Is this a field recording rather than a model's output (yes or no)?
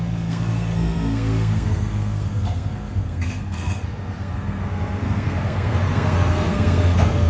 no